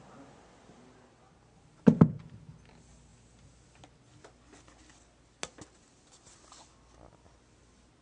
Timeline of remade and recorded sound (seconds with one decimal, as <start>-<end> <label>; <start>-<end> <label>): 0.0-8.0 recorded